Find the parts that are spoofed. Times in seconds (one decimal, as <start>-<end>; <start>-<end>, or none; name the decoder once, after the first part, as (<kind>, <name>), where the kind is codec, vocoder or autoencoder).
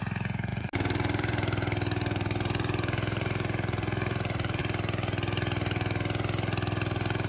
0.5-4.6 (vocoder, BigVGAN v2)